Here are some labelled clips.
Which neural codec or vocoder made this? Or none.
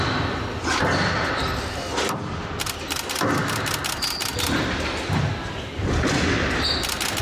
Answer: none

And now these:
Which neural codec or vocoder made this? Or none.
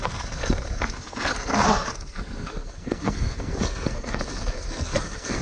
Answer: codec, SNAC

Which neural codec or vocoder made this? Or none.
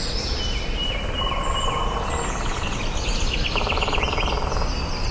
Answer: none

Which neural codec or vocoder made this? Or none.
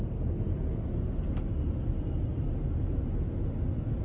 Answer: none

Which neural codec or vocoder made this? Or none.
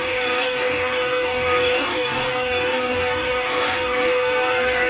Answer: codec, DAC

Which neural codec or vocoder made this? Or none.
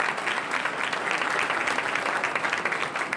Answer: none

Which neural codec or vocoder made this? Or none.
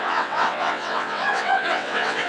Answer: vocoder, WaveNeXt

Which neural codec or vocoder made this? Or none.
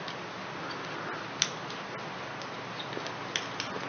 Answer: none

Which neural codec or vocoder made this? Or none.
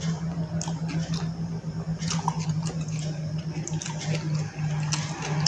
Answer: none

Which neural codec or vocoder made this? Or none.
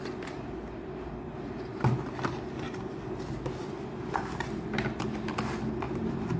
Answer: none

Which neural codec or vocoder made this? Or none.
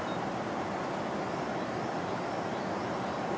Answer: none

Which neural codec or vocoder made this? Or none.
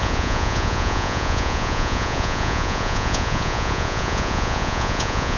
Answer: vocoder, Vocos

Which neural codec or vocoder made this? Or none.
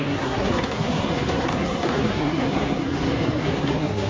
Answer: codec, SNAC